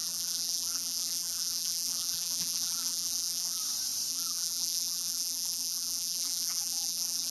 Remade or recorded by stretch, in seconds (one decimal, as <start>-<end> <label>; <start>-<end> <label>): 0.0-3.6 remade; 3.6-4.1 recorded; 4.1-7.3 remade